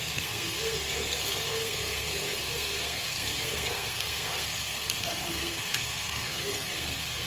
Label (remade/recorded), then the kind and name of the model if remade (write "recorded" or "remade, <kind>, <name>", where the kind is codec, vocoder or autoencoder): remade, codec, SNAC